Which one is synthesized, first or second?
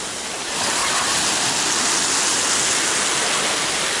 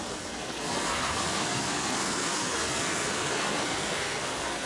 second